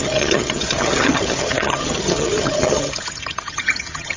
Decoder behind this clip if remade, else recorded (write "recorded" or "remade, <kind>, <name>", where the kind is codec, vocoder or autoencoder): remade, vocoder, HiFi-GAN